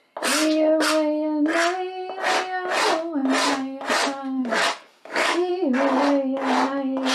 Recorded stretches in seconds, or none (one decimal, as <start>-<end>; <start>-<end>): 0.0-4.4; 5.5-7.1

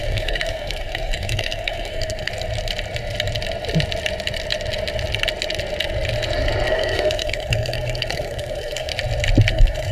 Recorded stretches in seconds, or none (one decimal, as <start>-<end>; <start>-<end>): 2.3-6.7; 8.9-9.5

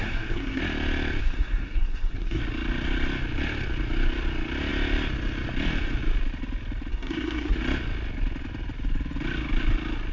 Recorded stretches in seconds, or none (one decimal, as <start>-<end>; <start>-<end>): 0.6-1.2; 2.4-6.9; 7.6-10.1

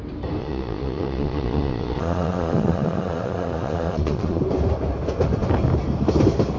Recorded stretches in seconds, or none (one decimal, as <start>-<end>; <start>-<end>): 0.0-0.4; 4.4-6.6

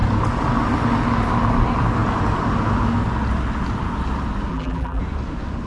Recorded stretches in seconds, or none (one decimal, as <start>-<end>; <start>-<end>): 0.0-4.5; 5.0-5.7

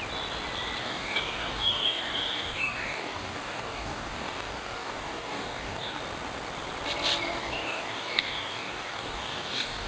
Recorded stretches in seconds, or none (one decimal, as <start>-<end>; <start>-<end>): 0.0-0.8; 6.0-7.4